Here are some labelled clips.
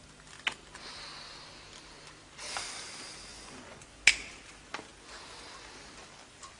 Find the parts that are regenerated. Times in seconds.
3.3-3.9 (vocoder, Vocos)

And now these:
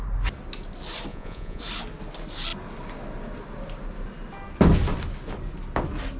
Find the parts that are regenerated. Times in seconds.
1.1-1.6 (vocoder, Vocos)